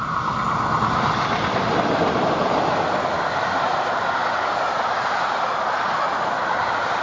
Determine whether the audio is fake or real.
real